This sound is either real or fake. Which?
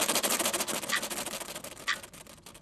real